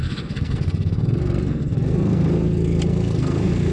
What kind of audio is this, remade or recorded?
remade